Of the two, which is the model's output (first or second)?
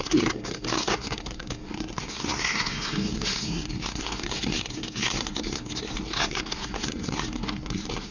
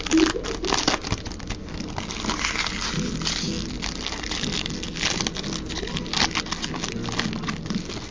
first